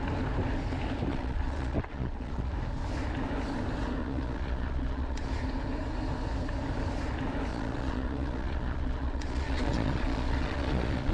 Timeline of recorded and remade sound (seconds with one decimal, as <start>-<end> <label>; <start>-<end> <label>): 0.0-1.1 recorded; 1.1-2.5 remade; 2.5-4.0 recorded; 4.0-5.3 remade; 5.3-7.5 recorded; 7.5-11.1 remade